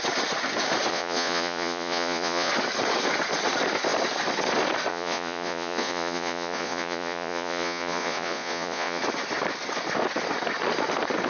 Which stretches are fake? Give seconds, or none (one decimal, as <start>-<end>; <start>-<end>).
0.9-2.5; 4.9-9.0